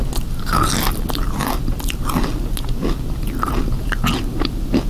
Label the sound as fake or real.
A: real